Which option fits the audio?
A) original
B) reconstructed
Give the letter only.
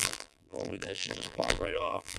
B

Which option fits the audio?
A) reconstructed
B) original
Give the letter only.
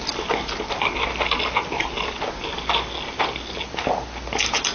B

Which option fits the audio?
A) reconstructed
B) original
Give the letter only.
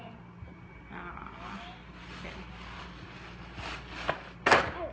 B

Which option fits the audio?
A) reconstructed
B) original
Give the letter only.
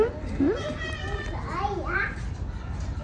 B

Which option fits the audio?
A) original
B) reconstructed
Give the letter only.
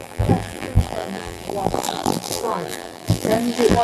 B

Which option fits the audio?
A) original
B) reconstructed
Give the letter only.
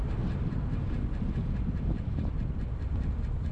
A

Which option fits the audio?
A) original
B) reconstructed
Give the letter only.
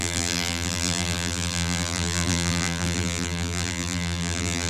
B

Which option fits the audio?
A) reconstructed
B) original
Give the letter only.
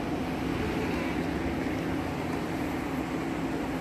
B